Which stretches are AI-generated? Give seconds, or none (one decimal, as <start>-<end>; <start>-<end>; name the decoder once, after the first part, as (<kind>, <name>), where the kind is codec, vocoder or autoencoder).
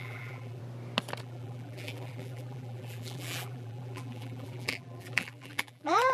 0.0-0.6 (vocoder, BigVGAN v2); 1.2-6.1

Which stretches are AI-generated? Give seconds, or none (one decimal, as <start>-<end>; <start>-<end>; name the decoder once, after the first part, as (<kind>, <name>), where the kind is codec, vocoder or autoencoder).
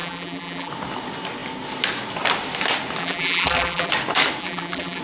0.0-0.7 (vocoder, BigVGAN v2); 3.0-3.9; 4.4-5.0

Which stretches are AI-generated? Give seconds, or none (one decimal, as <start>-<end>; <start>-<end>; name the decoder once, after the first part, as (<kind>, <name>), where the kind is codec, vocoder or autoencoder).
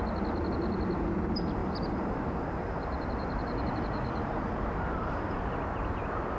1.6-5.4 (vocoder, BigVGAN v2)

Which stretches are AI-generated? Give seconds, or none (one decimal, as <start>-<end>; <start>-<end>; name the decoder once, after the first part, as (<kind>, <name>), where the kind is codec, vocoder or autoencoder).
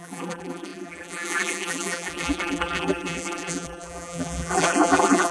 0.0-5.3 (vocoder, BigVGAN v2)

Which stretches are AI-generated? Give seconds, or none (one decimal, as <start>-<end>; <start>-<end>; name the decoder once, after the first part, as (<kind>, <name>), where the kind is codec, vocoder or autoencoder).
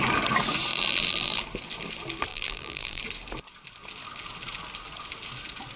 0.7-1.4 (vocoder, BigVGAN v2); 2.3-3.0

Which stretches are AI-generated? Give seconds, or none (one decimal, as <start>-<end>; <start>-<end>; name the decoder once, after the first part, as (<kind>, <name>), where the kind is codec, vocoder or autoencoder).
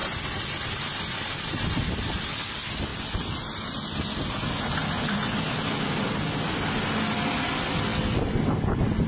0.0-2.4 (vocoder, BigVGAN v2)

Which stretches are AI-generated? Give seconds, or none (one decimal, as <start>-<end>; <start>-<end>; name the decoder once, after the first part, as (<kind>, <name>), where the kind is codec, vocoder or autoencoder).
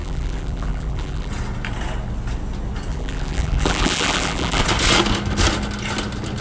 0.0-1.3 (vocoder, BigVGAN v2); 2.9-4.6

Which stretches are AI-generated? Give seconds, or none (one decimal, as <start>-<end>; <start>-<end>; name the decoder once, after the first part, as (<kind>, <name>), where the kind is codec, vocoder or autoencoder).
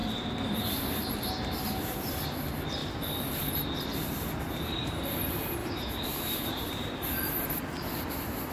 0.0-1.6 (vocoder, BigVGAN v2); 2.8-4.1; 5.6-7.3